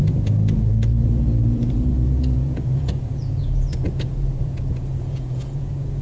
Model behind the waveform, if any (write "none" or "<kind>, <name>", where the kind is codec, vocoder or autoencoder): vocoder, Vocos